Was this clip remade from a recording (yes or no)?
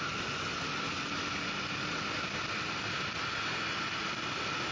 no